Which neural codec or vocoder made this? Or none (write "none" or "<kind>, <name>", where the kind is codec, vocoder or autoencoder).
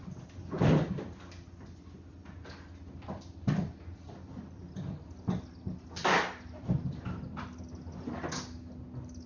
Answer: none